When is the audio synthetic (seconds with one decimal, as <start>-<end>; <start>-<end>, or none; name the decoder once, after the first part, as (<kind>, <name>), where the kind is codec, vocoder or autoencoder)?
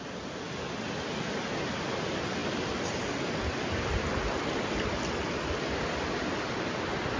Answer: none